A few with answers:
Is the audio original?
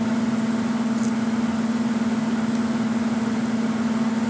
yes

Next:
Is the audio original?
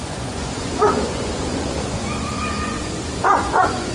no